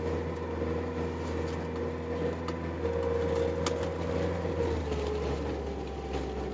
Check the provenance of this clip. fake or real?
real